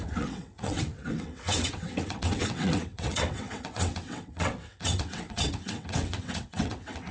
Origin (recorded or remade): remade